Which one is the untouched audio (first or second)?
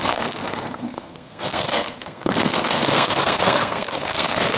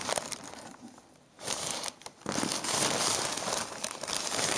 second